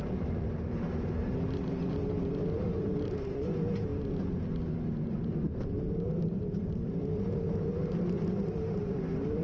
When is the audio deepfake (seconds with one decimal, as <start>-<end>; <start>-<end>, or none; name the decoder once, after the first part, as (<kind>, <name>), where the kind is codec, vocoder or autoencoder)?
0.0-1.2 (vocoder, BigVGAN v2); 2.1-3.9; 4.4-9.4